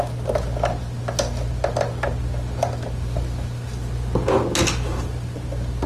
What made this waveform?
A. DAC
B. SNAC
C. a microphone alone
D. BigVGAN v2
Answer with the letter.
C